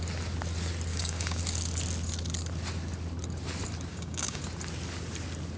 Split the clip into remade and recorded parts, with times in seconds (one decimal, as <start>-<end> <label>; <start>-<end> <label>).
0.0-0.9 recorded; 0.9-1.4 remade; 1.4-3.9 recorded; 3.9-4.4 remade; 4.4-5.6 recorded